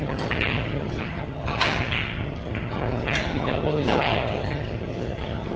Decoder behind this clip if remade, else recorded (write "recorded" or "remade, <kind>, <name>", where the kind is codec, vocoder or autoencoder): remade, vocoder, HiFi-GAN